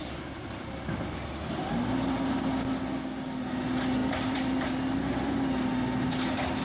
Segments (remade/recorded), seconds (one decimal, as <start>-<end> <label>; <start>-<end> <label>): 0.0-4.0 recorded; 4.0-4.5 remade; 4.5-6.6 recorded